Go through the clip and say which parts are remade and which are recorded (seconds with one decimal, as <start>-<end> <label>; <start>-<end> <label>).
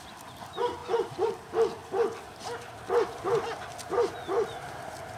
0.0-5.2 recorded